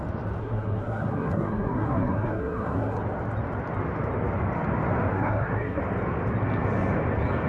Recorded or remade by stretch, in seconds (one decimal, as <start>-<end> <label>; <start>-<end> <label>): 0.0-0.4 recorded; 0.4-3.0 remade; 3.0-5.1 recorded; 5.1-5.8 remade; 5.8-7.5 recorded